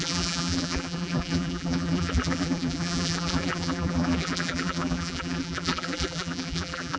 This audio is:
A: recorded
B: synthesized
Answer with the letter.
B